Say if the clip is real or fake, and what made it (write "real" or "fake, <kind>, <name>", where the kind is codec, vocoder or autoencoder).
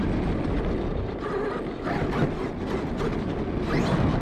real